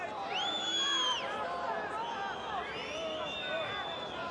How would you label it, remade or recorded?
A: recorded